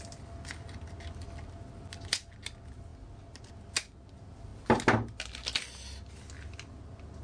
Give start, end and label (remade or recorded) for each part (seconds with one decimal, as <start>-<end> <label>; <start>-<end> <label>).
0.0-7.2 recorded

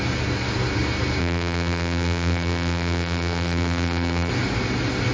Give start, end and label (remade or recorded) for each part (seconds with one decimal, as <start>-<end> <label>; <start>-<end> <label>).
0.0-1.2 recorded; 1.2-4.3 remade; 4.3-5.1 recorded